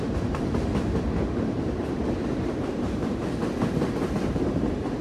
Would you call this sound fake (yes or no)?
yes